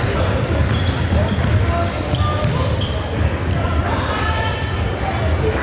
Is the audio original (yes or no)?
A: yes